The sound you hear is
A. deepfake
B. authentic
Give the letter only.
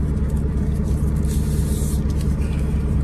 B